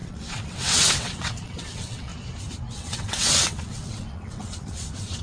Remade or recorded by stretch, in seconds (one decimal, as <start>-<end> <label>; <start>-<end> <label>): 0.0-2.1 remade; 2.1-2.7 recorded; 2.7-5.2 remade